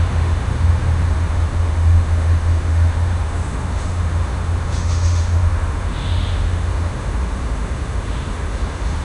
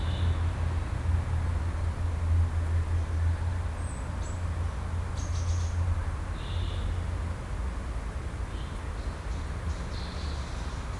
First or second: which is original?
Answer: second